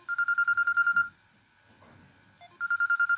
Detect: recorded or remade recorded